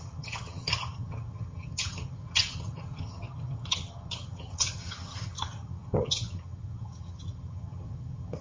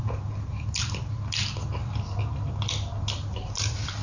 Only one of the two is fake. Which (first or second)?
first